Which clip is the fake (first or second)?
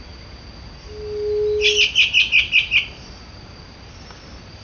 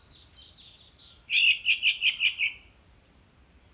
second